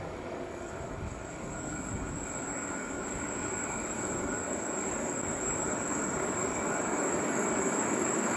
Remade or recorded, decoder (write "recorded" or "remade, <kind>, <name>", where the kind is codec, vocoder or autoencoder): remade, codec, DAC